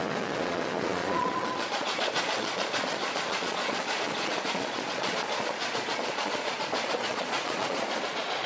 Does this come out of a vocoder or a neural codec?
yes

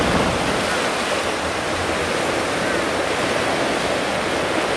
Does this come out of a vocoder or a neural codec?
no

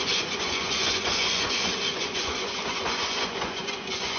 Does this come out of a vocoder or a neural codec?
yes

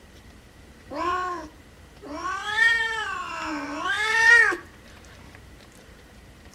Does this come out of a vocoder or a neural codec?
yes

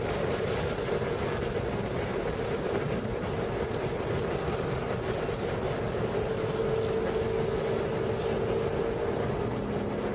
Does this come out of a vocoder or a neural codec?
no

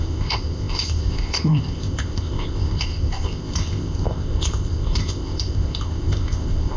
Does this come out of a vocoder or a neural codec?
yes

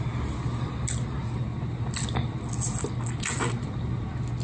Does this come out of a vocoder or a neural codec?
no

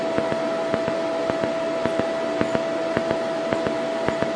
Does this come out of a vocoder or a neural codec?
no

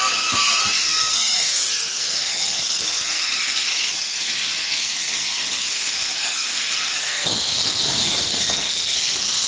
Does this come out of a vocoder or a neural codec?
yes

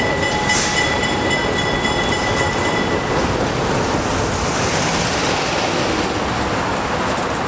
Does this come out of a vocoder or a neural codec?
no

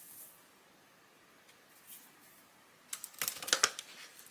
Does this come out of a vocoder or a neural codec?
no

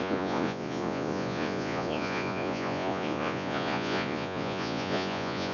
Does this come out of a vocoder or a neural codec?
yes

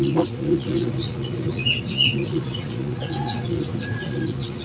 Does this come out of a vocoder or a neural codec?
yes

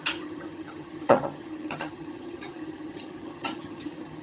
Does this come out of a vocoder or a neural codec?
yes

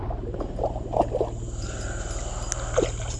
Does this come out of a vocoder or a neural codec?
no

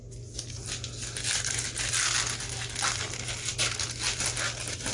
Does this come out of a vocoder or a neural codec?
no